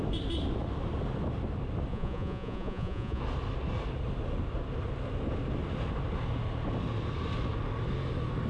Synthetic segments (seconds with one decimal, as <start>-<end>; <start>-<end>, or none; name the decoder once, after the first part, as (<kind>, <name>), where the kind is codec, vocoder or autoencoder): 1.9-3.2 (vocoder, Vocos)